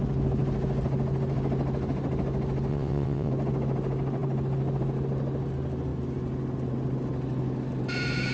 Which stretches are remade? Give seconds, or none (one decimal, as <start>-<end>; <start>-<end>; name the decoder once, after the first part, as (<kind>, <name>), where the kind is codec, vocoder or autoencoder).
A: 2.7-3.3 (vocoder, WaveNeXt)